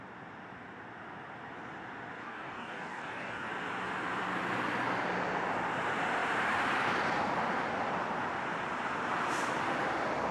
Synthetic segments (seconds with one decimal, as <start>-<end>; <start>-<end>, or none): 2.2-3.5